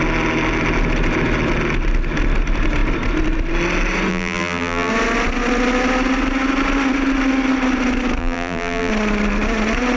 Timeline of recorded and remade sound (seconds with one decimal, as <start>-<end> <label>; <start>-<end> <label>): 0.0-4.1 recorded; 4.1-4.9 remade; 4.9-8.2 recorded; 8.2-8.9 remade; 8.9-10.0 recorded